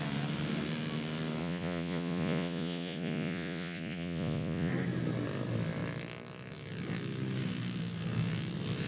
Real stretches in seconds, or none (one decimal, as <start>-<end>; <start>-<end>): 0.0-1.4; 4.7-8.9